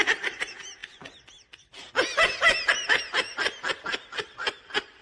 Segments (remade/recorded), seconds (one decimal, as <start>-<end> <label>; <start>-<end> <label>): 0.0-5.0 recorded